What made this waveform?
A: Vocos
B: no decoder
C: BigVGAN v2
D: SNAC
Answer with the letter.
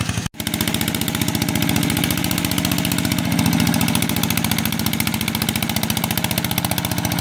B